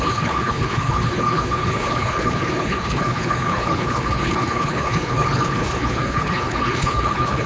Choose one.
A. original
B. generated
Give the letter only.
B